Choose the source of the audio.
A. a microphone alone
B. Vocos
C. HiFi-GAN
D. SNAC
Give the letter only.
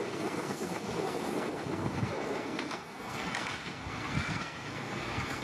D